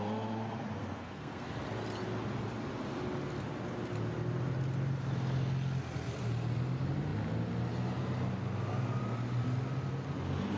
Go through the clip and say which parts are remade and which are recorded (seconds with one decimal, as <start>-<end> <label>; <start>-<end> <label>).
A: 0.0-0.8 recorded; 0.8-1.5 remade; 1.5-10.6 recorded